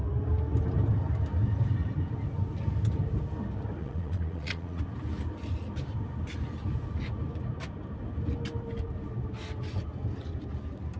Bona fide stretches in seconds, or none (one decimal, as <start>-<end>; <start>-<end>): 0.0-3.8; 4.8-11.0